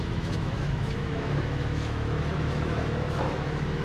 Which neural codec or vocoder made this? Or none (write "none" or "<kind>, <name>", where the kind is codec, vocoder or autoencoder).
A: autoencoder, DAC-VAE